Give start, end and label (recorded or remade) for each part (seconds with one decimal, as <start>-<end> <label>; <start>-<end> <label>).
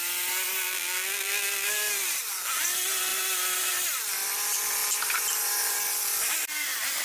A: 0.0-0.6 recorded; 0.6-1.7 remade; 1.7-7.0 recorded